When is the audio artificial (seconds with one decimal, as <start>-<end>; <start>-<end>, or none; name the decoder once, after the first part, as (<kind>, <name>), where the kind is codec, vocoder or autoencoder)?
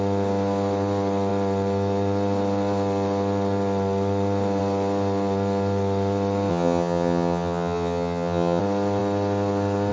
6.5-8.6 (vocoder, HiFi-GAN)